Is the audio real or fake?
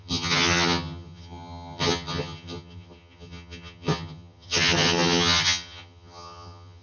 fake